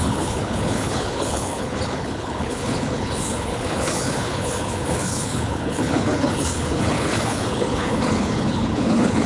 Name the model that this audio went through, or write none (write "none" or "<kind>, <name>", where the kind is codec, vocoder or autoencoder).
codec, HILCodec